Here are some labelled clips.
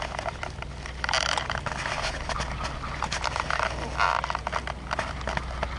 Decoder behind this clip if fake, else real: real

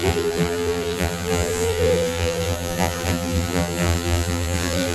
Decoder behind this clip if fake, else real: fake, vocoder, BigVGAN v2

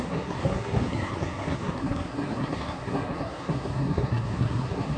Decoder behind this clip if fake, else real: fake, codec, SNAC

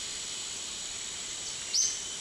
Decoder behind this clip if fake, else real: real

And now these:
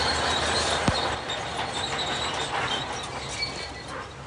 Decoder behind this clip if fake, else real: real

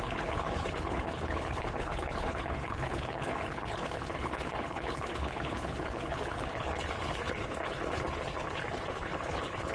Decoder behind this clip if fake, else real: fake, codec, HILCodec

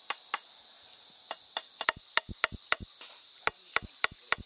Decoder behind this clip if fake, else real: real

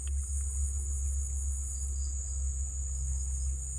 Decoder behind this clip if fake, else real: real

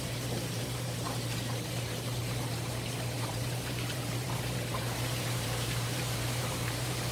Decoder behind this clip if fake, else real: fake, vocoder, BigVGAN v2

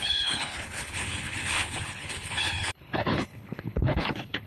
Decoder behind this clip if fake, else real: fake, codec, HILCodec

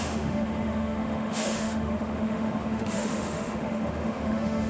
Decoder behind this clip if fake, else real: fake, autoencoder, DAC-VAE